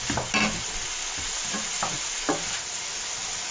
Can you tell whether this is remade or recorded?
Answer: recorded